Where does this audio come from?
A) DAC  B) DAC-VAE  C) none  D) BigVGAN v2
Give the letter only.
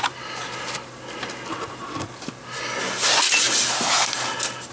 C